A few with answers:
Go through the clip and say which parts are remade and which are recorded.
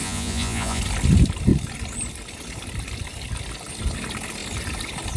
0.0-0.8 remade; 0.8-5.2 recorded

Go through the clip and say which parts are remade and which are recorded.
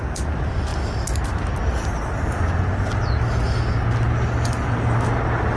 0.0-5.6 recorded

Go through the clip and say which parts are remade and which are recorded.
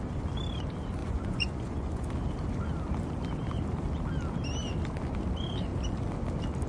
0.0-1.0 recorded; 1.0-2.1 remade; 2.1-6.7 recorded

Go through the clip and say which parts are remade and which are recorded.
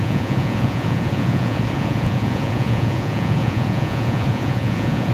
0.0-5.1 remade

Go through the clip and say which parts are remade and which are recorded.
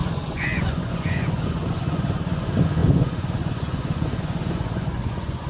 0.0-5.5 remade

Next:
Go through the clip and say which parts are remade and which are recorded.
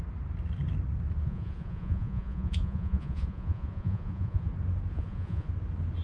0.0-1.2 recorded; 1.2-4.5 remade; 4.5-4.9 recorded; 4.9-5.5 remade; 5.5-6.0 recorded